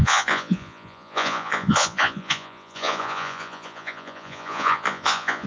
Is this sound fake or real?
fake